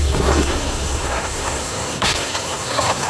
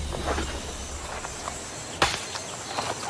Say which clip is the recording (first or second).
second